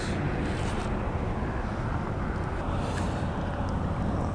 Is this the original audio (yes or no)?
yes